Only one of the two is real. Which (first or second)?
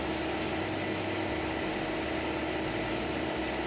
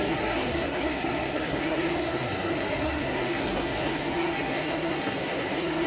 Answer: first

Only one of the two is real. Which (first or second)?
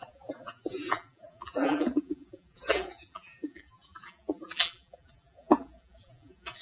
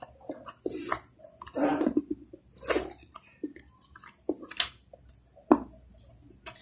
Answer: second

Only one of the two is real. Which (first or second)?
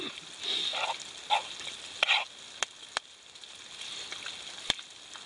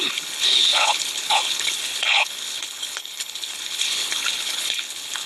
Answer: first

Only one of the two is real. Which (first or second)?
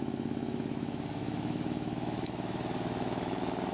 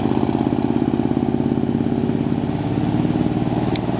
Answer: second